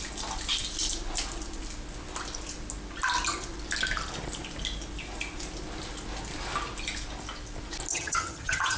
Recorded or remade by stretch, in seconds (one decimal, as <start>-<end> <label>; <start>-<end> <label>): 0.0-7.9 recorded; 7.9-8.8 remade